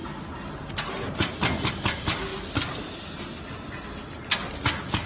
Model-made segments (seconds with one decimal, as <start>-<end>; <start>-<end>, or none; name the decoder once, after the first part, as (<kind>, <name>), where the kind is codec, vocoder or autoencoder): none